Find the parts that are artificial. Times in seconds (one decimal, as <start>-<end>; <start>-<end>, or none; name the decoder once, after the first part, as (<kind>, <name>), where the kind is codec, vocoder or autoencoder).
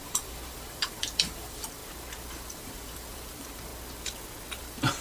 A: 0.0-1.8 (vocoder, BigVGAN v2); 2.5-3.7; 4.6-5.0